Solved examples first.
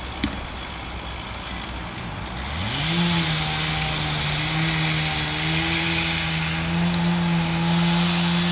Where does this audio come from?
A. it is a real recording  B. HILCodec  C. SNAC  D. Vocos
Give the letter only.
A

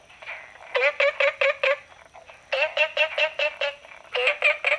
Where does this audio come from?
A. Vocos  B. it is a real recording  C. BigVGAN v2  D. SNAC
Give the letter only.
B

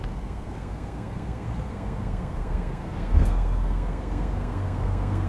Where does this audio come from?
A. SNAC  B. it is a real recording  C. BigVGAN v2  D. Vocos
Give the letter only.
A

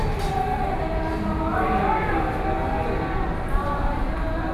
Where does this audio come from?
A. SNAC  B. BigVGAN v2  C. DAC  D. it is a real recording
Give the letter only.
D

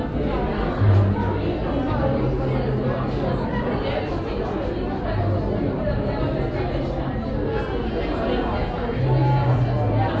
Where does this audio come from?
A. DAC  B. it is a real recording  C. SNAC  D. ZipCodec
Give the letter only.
B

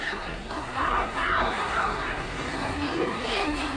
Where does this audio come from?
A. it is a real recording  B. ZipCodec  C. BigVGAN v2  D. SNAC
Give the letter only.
D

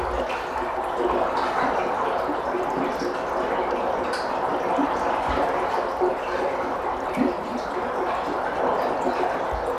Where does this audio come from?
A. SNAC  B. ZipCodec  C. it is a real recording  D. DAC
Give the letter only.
C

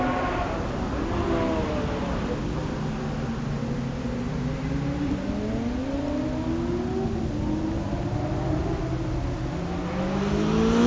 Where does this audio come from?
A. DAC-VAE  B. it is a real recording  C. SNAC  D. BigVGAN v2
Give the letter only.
B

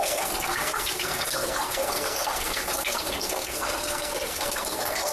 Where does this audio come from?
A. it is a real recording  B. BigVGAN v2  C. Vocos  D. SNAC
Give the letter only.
D